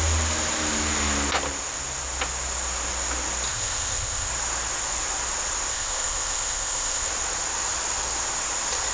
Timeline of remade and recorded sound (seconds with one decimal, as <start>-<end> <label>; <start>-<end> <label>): 0.0-3.5 recorded; 3.5-4.3 remade; 4.3-5.7 recorded; 5.7-7.1 remade; 7.1-8.9 recorded